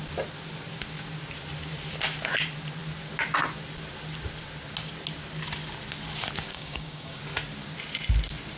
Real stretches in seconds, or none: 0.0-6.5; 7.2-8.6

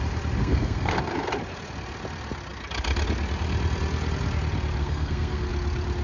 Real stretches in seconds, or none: 0.0-0.4; 1.0-4.8; 5.5-6.0

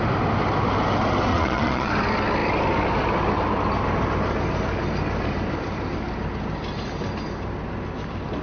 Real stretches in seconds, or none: 0.0-1.3; 1.9-8.4

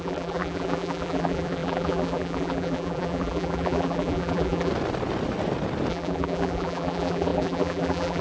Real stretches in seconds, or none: 4.7-5.9